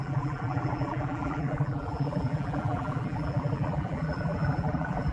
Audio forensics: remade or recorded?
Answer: remade